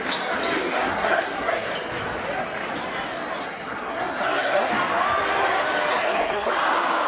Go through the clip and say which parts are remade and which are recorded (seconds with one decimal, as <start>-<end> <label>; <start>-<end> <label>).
0.0-0.7 recorded; 0.7-1.7 remade; 1.7-3.4 recorded; 3.4-4.7 remade; 4.7-5.9 recorded; 5.9-6.5 remade; 6.5-7.1 recorded